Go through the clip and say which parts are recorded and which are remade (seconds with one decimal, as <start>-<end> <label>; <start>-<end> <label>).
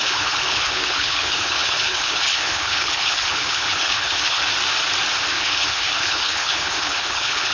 0.0-4.4 remade; 4.4-5.3 recorded; 5.3-7.5 remade